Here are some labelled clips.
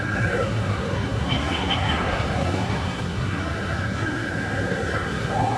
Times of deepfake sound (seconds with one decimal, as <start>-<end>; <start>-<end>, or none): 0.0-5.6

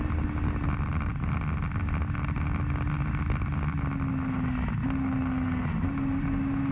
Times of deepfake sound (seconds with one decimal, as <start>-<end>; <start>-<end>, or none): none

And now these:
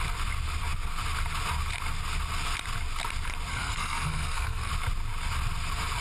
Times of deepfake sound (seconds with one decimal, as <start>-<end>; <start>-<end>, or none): 3.5-4.7

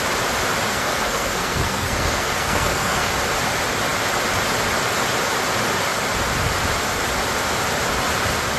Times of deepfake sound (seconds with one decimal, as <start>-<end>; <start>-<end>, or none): 0.7-3.1

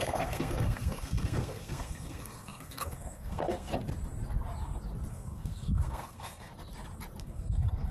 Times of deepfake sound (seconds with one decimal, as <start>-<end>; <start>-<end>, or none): 0.0-3.7; 5.1-6.5; 7.2-7.9

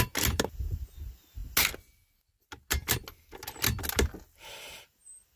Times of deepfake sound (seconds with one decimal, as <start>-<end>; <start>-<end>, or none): none